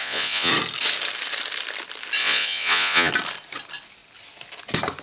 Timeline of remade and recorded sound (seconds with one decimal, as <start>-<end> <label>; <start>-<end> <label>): 0.0-0.5 remade; 0.5-2.2 recorded; 2.2-3.1 remade; 3.1-5.0 recorded